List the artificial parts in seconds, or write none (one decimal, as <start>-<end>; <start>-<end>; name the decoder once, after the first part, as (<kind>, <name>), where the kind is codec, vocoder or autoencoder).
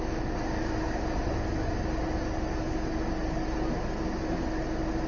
none